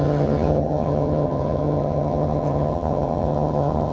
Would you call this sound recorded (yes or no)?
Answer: no